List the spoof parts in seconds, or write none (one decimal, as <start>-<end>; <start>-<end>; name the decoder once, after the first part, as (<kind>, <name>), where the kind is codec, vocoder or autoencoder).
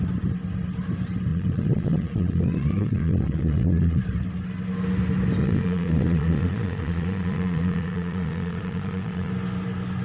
1.3-4.0 (vocoder, Vocos); 5.4-9.3